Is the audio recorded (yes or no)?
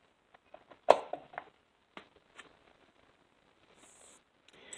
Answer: yes